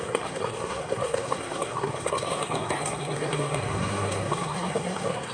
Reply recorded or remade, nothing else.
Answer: remade